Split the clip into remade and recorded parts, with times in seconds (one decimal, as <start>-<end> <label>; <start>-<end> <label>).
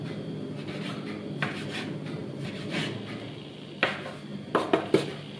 0.0-5.4 recorded